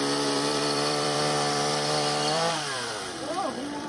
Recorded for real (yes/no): no